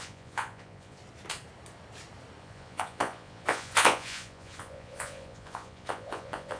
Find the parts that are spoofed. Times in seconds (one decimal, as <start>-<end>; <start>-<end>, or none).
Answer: 0.0-1.0; 2.4-6.6